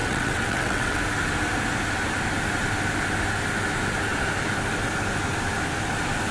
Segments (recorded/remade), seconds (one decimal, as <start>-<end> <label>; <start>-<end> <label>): 0.0-1.0 remade; 1.0-6.3 recorded